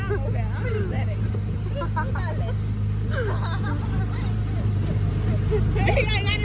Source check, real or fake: real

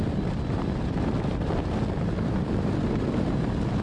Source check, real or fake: real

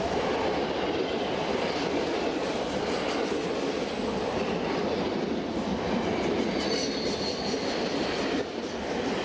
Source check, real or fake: real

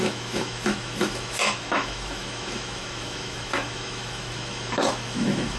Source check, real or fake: fake